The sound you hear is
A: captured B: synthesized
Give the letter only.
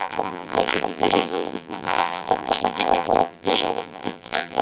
B